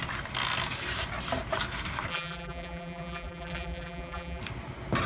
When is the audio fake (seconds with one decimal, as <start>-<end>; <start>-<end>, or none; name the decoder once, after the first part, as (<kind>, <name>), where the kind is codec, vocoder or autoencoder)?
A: 2.1-4.4 (vocoder, BigVGAN v2)